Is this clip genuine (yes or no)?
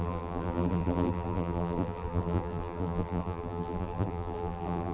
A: no